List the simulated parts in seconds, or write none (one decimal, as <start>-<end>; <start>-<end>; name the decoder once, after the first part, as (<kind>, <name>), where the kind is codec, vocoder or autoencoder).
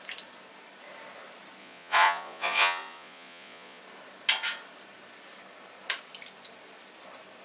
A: 1.6-3.8 (vocoder, Vocos)